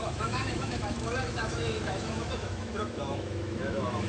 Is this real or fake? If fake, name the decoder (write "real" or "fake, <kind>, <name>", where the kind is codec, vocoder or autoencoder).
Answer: fake, autoencoder, DAC-VAE